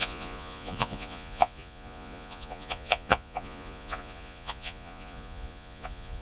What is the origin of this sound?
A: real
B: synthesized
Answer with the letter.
B